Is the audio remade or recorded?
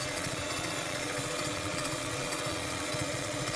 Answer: remade